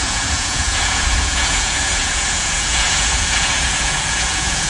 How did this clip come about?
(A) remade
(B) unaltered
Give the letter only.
A